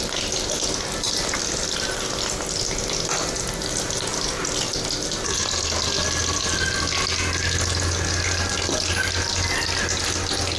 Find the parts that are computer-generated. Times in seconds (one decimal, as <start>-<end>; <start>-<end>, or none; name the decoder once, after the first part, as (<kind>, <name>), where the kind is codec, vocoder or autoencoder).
none

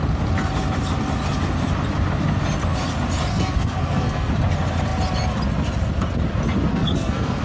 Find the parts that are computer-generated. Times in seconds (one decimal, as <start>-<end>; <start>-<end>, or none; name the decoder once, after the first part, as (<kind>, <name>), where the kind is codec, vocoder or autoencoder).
3.3-4.3 (codec, SNAC); 6.7-7.4

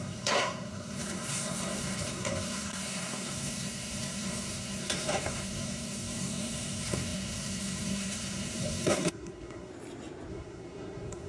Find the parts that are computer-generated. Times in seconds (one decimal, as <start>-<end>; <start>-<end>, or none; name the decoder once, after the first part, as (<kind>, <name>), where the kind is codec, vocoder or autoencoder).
0.0-9.7 (codec, SNAC); 10.3-11.3